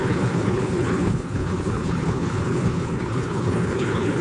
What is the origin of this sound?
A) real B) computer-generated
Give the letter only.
B